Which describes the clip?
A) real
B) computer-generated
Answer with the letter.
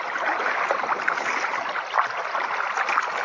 A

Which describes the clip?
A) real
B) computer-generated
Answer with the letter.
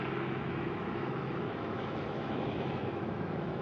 B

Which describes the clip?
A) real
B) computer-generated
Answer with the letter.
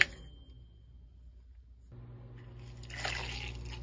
A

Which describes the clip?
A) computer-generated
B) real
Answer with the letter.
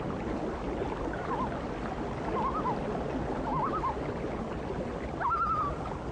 B